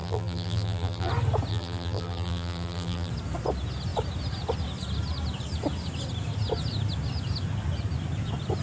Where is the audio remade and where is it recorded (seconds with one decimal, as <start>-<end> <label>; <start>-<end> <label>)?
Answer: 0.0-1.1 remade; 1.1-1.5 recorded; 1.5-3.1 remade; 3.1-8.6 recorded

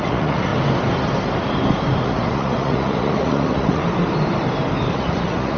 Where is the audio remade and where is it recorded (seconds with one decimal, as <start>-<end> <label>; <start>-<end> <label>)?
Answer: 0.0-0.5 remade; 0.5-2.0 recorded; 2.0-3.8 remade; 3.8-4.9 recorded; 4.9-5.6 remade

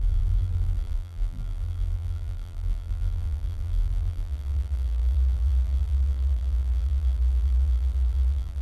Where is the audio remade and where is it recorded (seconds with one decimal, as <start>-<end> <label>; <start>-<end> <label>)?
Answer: 0.0-8.6 remade